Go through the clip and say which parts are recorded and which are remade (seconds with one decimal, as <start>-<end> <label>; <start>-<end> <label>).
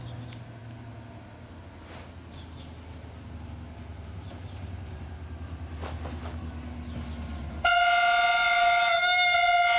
0.0-9.8 recorded